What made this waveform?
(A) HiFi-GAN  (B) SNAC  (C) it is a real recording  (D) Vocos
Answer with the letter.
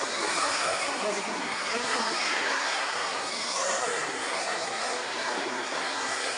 B